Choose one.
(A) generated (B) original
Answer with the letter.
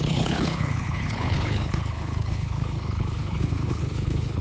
A